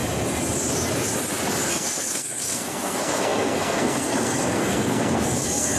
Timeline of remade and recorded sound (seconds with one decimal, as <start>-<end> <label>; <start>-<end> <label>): 0.0-1.7 recorded; 1.7-5.8 remade